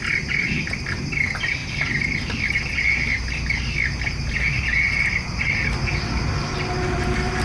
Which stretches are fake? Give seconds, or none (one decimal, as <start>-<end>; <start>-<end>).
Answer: none